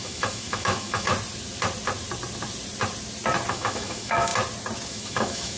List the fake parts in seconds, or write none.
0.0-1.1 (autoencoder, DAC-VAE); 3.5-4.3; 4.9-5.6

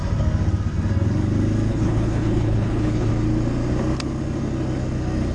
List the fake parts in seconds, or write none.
1.7-3.1 (codec, HILCodec)

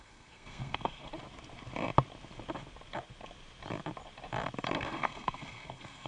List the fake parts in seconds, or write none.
0.0-1.1 (codec, SNAC); 4.8-6.1

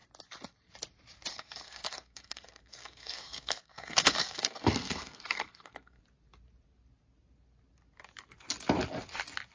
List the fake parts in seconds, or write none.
1.3-6.0 (codec, SNAC)